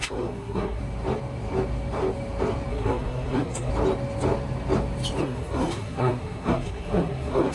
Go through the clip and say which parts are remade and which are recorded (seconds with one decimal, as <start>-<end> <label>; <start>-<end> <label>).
0.0-0.8 remade; 0.8-2.7 recorded; 2.7-3.7 remade; 3.7-5.2 recorded; 5.2-7.5 remade